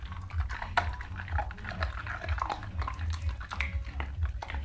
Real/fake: real